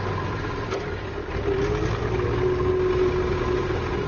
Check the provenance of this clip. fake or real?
real